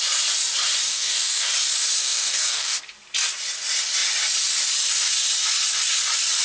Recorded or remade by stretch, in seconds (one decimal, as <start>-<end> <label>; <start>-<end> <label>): 0.0-0.9 recorded; 0.9-1.5 remade; 1.5-2.0 recorded; 2.0-2.8 remade; 2.8-6.4 recorded